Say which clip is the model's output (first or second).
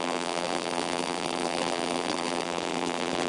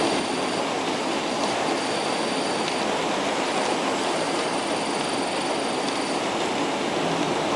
first